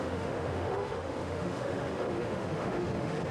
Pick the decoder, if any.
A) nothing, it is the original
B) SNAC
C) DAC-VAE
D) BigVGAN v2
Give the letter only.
C